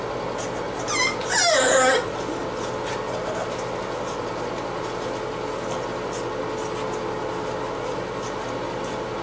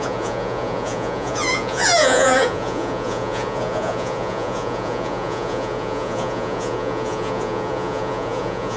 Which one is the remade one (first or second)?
second